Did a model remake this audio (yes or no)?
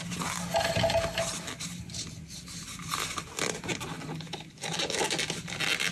no